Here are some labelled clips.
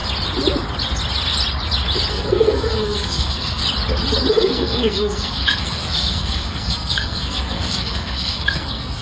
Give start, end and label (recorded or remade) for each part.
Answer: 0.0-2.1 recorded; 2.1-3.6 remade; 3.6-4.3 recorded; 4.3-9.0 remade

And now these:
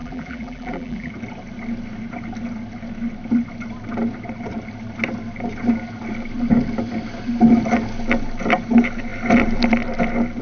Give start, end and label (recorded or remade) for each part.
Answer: 0.0-1.1 remade; 1.1-10.4 recorded

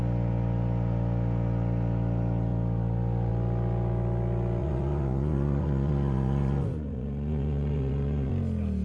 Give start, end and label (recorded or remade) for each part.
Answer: 0.0-4.6 recorded; 4.6-8.3 remade; 8.3-8.8 recorded

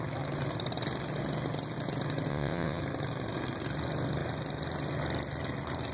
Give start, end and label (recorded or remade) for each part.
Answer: 0.0-2.3 recorded; 2.3-2.8 remade; 2.8-5.9 recorded

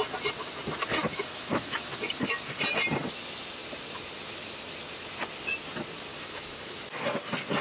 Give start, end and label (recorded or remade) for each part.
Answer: 0.0-1.1 recorded; 1.1-1.9 remade; 1.9-6.1 recorded; 6.1-6.8 remade; 6.8-7.6 recorded